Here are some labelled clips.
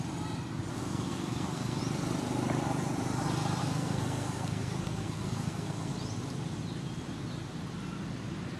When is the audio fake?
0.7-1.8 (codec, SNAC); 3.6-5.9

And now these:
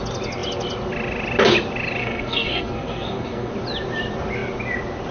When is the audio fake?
2.0-3.5 (codec, SNAC)

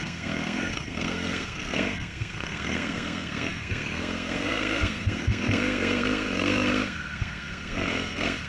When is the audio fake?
0.0-8.5 (codec, SNAC)